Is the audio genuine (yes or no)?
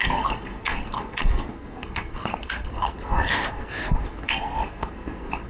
no